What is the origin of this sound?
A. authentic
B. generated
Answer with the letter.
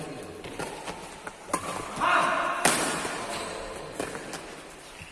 A